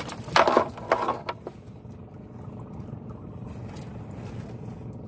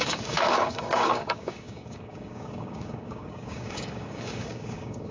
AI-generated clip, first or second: second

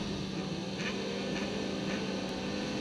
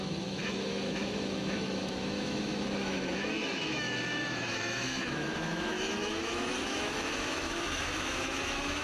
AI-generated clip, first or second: second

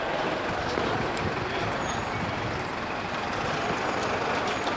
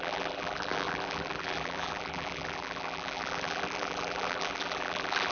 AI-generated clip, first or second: second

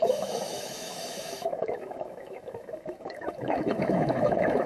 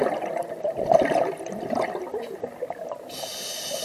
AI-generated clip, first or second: first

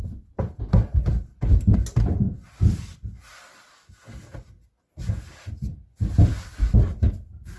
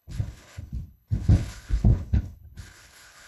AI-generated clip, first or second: second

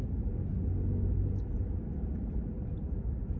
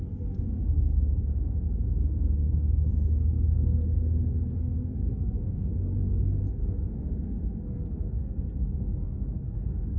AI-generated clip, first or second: second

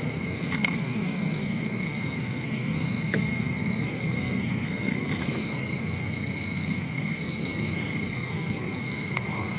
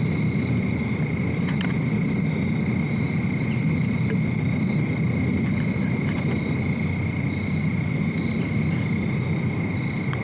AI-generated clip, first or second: first